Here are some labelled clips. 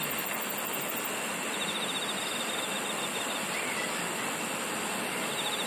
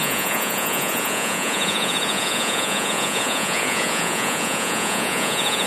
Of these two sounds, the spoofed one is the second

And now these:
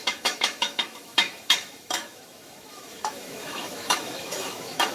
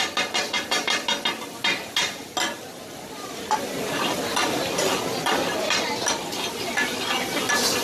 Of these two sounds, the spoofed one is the first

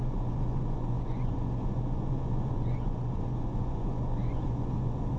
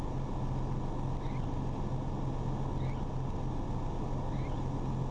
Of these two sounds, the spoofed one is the first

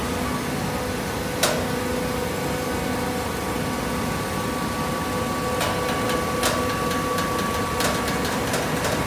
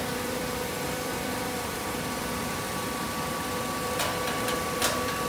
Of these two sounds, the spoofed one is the second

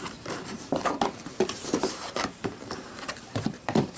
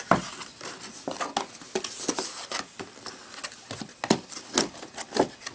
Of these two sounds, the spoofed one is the first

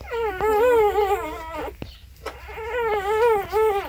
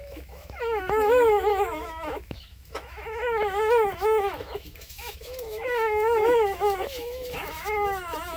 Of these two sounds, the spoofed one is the second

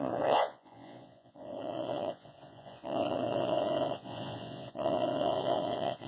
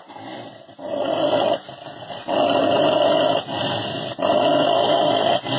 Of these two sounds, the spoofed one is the first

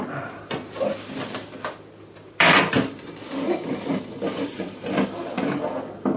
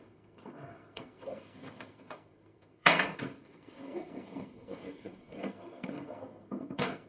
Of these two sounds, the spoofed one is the second